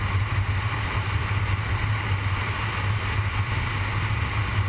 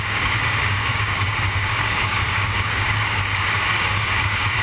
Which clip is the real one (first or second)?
first